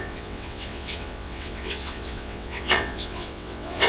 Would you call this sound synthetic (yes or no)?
yes